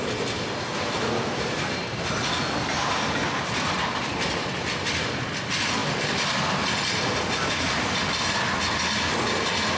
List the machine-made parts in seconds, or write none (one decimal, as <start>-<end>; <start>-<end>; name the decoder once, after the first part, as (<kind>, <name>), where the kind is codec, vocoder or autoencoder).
none